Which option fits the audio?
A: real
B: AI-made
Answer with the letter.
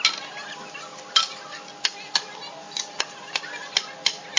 A